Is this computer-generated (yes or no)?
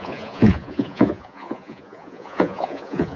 yes